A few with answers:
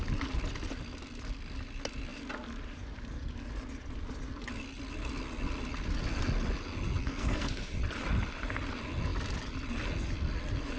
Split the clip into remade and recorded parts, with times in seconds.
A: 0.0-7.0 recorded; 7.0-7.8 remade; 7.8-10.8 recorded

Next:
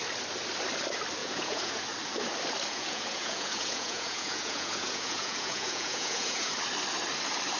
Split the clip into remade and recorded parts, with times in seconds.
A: 0.0-1.2 recorded; 1.2-1.8 remade; 1.8-2.7 recorded; 2.7-6.5 remade; 6.5-7.6 recorded

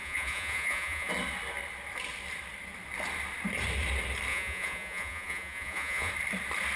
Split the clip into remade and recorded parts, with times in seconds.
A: 0.0-1.1 remade; 1.1-4.3 recorded; 4.3-6.1 remade; 6.1-6.8 recorded

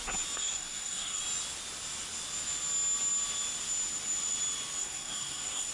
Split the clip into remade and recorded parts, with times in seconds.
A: 0.0-0.4 recorded; 0.4-1.2 remade; 1.2-4.8 recorded; 4.8-5.7 remade

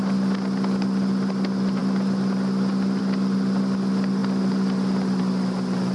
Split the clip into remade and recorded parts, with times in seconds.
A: 0.0-5.9 recorded

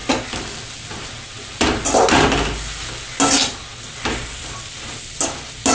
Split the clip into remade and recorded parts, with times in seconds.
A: 0.0-5.7 recorded